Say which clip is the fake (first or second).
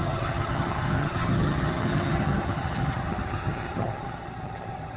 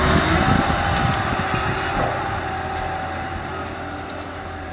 first